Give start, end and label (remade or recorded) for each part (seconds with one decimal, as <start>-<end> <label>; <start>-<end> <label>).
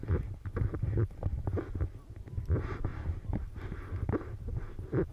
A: 0.0-1.1 remade; 1.1-2.9 recorded; 2.9-4.1 remade; 4.1-5.1 recorded